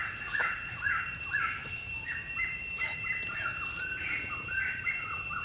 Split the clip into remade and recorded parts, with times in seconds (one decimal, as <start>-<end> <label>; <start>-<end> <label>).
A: 0.0-5.4 remade